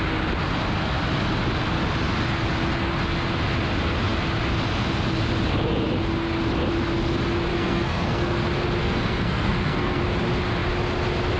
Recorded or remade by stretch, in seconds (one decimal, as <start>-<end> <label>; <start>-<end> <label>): 0.0-7.5 recorded; 7.5-8.4 remade; 8.4-8.8 recorded; 8.8-10.0 remade; 10.0-11.4 recorded

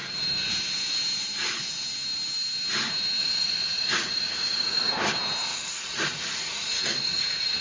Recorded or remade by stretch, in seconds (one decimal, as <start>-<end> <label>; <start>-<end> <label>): 0.0-3.2 recorded; 3.2-4.9 remade; 4.9-5.5 recorded; 5.5-7.6 remade

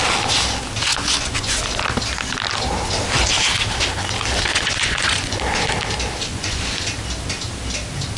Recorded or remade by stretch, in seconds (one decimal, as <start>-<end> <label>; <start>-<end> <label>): 0.0-0.9 recorded; 0.9-1.6 remade; 1.6-4.5 recorded; 4.5-5.4 remade; 5.4-6.3 recorded; 6.3-6.8 remade; 6.8-8.2 recorded

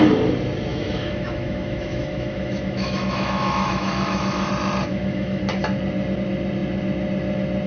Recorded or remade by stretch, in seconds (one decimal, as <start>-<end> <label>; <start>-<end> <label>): 0.0-0.7 recorded; 0.7-4.5 remade; 4.5-4.9 recorded; 4.9-5.4 remade; 5.4-7.7 recorded

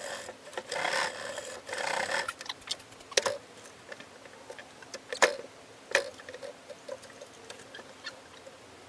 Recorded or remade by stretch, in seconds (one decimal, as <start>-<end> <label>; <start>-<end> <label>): 0.0-8.9 recorded

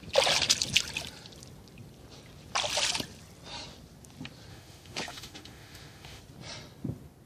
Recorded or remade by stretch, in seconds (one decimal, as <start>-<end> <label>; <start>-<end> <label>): 0.0-4.5 recorded; 4.5-6.2 remade; 6.2-7.3 recorded

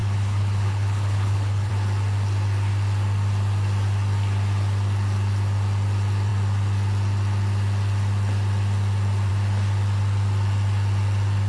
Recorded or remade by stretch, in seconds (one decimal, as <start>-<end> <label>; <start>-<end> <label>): 0.0-1.7 remade; 1.7-11.5 recorded